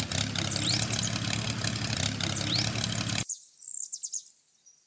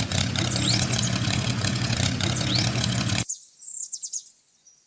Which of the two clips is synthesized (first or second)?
second